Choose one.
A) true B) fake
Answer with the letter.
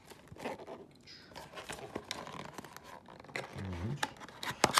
A